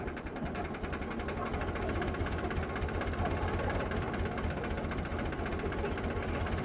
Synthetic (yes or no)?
no